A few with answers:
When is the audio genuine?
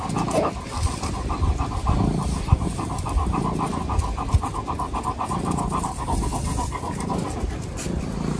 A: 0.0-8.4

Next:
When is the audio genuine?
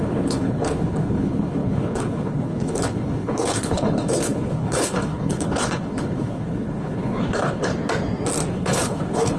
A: 7.7-8.5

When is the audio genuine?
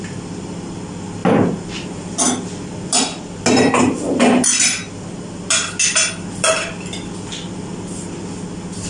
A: 0.0-8.9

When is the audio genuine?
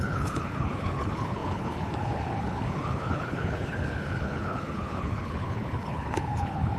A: none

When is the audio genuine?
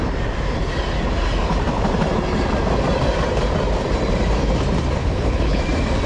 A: 0.0-5.0; 5.6-6.1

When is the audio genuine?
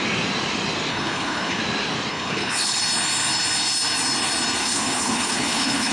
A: 0.0-0.9; 1.6-2.1; 2.8-4.6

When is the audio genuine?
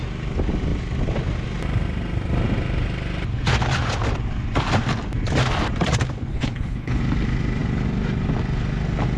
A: 0.0-6.3; 7.0-9.2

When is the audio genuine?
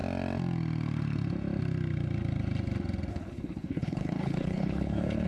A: 0.0-3.1